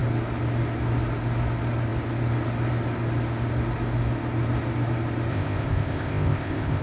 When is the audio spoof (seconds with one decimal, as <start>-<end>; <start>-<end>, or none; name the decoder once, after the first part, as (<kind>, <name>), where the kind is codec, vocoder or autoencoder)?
5.3-6.8 (codec, ZipCodec)